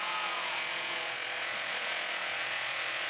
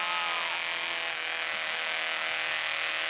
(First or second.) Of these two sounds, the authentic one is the second